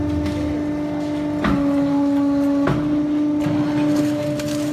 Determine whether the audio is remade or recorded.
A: recorded